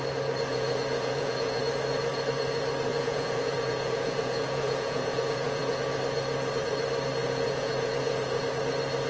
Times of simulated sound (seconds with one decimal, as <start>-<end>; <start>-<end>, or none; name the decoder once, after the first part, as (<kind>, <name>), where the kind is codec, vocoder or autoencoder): 0.5-1.6 (vocoder, Vocos); 2.9-5.8; 7.2-8.4